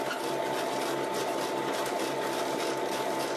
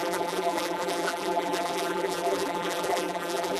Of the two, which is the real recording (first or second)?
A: first